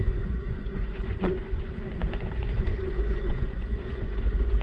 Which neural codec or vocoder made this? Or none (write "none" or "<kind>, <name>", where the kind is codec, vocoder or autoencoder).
vocoder, Vocos